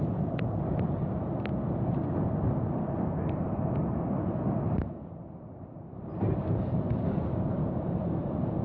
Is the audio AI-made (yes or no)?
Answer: no